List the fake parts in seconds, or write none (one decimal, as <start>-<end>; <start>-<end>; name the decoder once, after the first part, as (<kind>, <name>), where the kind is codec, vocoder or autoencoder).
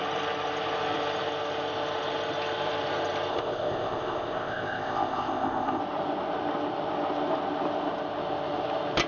3.3-5.8 (codec, ZipCodec)